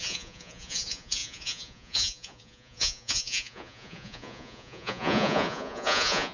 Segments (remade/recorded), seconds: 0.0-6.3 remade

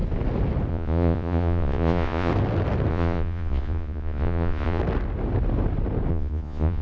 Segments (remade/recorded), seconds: 0.0-0.7 recorded; 0.7-2.3 remade; 2.3-2.9 recorded; 2.9-4.8 remade; 4.8-6.1 recorded; 6.1-6.8 remade

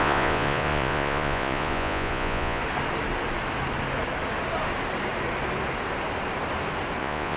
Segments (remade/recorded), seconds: 0.0-2.6 remade; 2.6-7.0 recorded; 7.0-7.4 remade

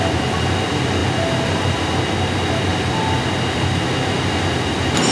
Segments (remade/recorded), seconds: 0.0-5.1 recorded

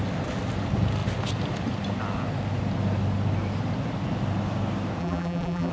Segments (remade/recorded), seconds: 0.0-5.0 recorded; 5.0-5.7 remade

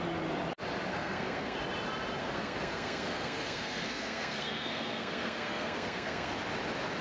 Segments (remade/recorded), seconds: 0.0-0.9 recorded; 0.9-1.6 remade; 1.6-2.2 recorded; 2.2-6.3 remade; 6.3-7.0 recorded

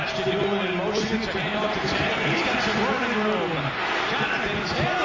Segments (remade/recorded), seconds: 0.0-5.0 recorded

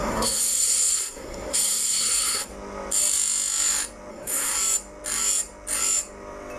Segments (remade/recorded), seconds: 0.0-2.5 remade; 2.5-4.1 recorded; 4.1-4.5 remade; 4.5-6.6 recorded